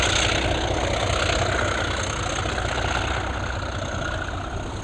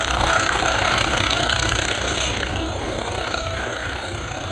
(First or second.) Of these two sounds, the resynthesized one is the second